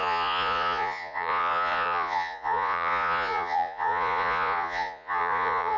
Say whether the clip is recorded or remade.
remade